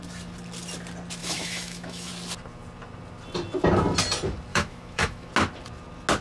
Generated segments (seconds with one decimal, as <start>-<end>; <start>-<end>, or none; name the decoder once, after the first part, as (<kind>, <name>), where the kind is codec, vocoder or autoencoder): 1.2-2.1 (autoencoder, DAC-VAE); 4.5-5.3